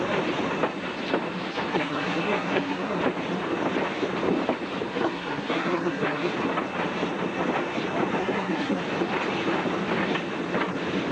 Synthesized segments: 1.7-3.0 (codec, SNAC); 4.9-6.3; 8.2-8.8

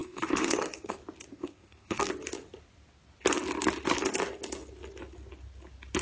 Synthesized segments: 0.0-0.9 (codec, SNAC); 1.3-2.1